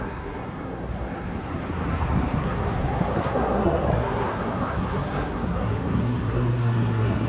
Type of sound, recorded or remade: remade